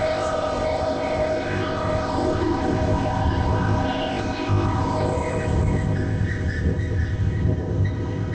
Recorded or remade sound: remade